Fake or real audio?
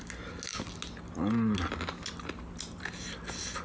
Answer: real